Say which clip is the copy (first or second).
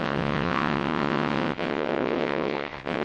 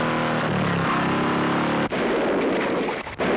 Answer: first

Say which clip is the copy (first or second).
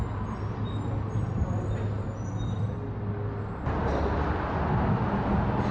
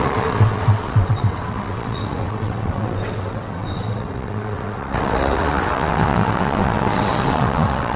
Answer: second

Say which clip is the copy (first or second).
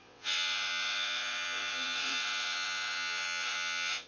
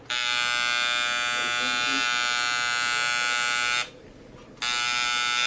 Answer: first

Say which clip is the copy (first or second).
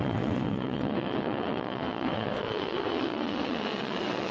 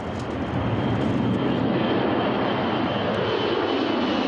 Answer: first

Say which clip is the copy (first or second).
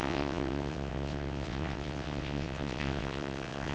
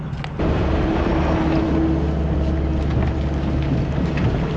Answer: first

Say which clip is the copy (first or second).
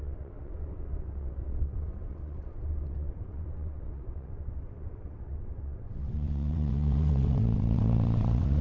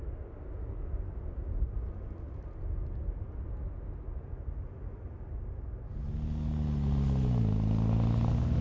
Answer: first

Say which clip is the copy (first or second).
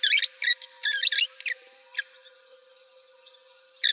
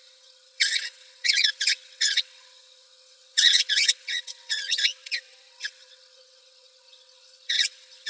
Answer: second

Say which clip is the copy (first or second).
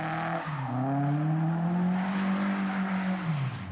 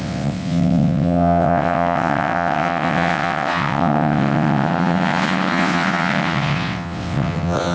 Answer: second